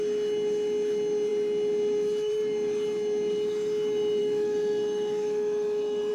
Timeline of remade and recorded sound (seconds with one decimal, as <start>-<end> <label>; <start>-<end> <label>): 0.0-4.2 recorded; 4.2-6.1 remade